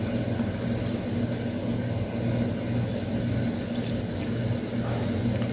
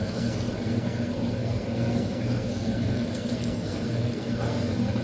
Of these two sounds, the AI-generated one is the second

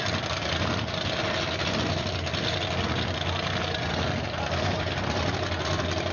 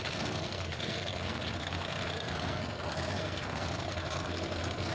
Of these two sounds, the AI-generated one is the second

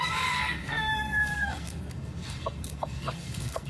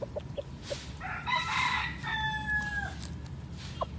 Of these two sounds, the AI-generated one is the first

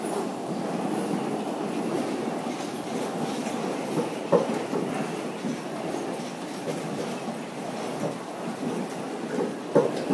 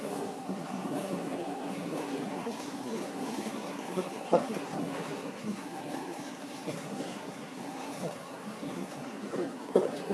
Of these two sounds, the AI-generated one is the second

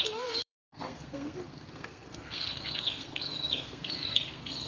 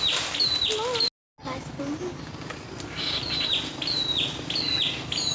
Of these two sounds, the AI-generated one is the first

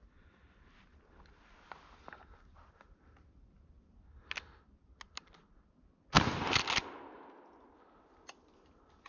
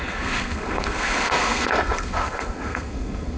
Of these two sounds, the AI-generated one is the second